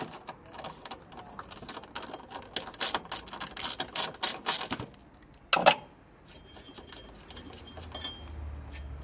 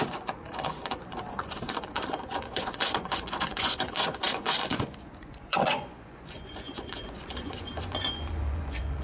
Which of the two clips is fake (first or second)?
second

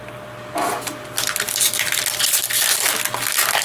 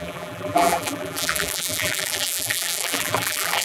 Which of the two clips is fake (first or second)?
second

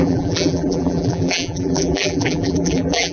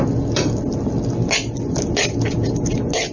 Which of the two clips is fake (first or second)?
first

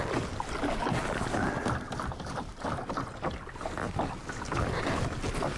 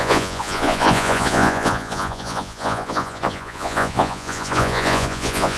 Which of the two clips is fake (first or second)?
second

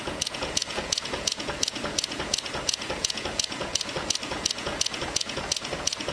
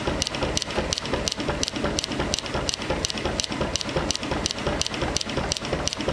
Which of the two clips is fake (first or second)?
first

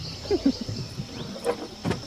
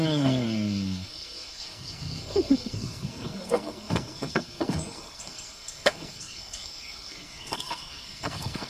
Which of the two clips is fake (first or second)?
second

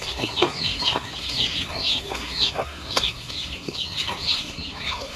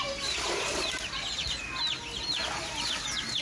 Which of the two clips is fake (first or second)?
first